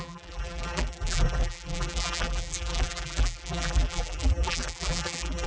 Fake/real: fake